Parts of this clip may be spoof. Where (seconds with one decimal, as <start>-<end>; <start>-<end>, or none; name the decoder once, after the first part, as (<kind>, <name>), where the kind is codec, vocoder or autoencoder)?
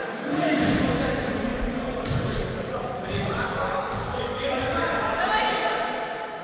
0.0-0.6 (codec, DAC); 1.5-4.7